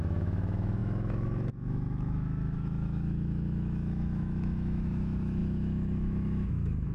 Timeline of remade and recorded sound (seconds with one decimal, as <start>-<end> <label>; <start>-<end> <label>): 0.0-6.9 remade